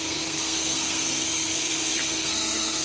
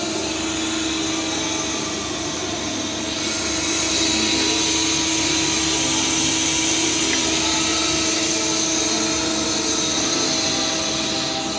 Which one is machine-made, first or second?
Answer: first